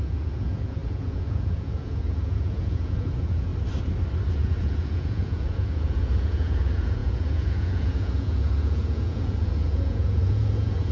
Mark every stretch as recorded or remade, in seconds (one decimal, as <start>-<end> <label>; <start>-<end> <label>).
0.0-3.5 remade; 3.5-4.3 recorded; 4.3-10.9 remade